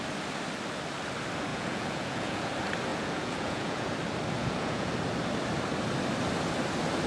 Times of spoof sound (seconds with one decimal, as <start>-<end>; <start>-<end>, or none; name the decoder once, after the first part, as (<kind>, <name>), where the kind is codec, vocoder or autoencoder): 1.5-2.5 (vocoder, Vocos); 2.9-3.9; 4.4-4.9

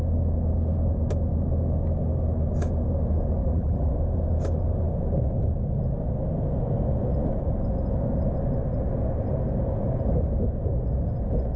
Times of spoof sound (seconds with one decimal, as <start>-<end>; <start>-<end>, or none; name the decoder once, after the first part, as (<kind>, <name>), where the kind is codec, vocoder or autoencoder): 3.4-3.9 (vocoder, BigVGAN v2)